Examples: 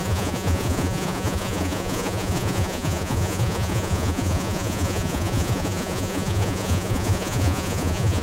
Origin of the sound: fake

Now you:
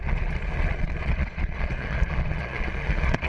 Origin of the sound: fake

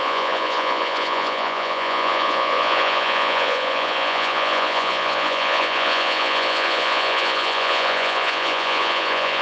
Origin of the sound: fake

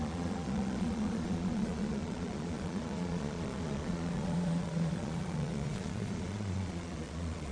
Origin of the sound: fake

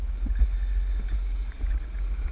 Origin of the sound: real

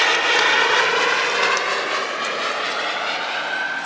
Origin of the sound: real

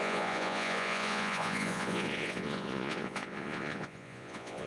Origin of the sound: fake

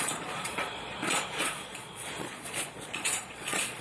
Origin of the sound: fake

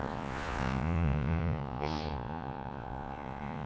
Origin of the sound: fake